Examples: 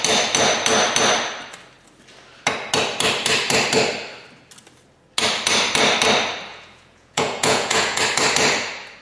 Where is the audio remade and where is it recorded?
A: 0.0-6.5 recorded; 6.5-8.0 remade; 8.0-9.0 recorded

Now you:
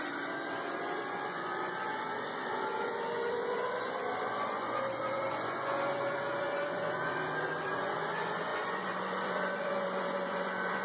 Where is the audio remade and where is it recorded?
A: 0.0-10.8 remade

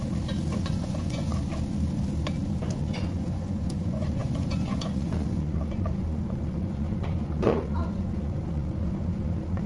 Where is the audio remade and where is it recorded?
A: 0.0-0.6 recorded; 0.6-1.3 remade; 1.3-2.7 recorded; 2.7-9.7 remade

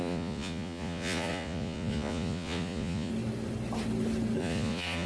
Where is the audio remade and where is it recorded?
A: 0.0-3.1 remade; 3.1-4.4 recorded; 4.4-5.1 remade

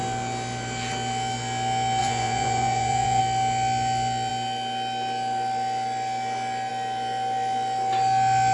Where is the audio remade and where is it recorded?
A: 0.0-2.0 recorded; 2.0-3.2 remade; 3.2-8.5 recorded

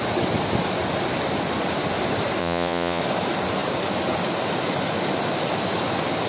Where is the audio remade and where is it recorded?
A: 0.0-2.4 recorded; 2.4-3.0 remade; 3.0-6.3 recorded